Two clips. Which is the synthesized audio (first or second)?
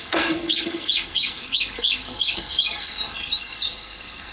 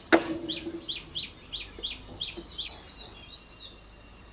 first